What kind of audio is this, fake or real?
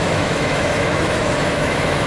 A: fake